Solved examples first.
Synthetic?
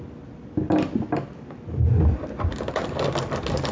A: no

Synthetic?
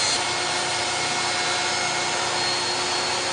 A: no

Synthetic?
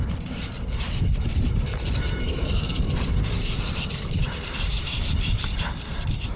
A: yes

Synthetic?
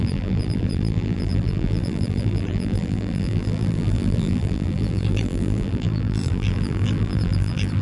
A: yes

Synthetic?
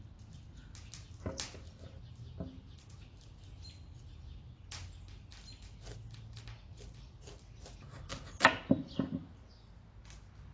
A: no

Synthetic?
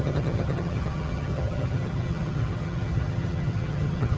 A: yes